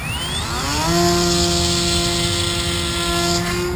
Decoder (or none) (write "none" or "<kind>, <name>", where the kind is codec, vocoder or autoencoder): none